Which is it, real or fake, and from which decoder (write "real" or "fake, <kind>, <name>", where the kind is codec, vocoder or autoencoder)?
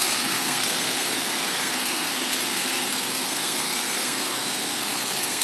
fake, codec, SNAC